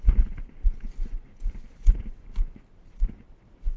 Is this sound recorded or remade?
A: recorded